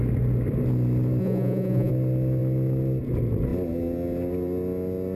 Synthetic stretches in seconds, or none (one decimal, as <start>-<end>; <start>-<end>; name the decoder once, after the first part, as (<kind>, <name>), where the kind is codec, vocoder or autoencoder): 1.2-1.9 (vocoder, Vocos)